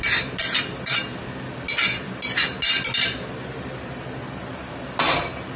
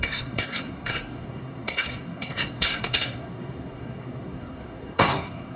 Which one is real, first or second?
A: first